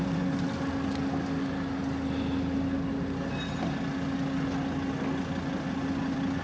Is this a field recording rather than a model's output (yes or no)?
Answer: yes